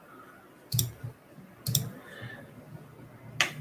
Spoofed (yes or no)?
no